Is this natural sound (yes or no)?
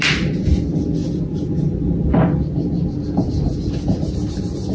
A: yes